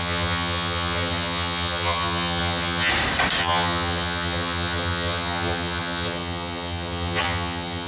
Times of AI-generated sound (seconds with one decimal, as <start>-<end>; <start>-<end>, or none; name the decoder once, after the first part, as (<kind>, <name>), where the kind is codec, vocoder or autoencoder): 0.0-2.9 (vocoder, HiFi-GAN); 3.4-7.9